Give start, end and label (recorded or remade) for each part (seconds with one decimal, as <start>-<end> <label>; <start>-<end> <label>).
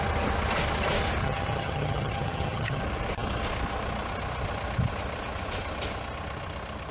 0.0-1.2 recorded; 1.2-2.8 remade; 2.8-6.9 recorded